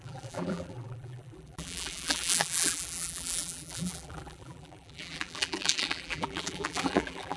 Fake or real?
fake